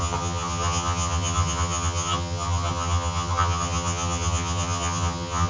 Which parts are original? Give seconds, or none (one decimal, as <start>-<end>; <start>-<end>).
none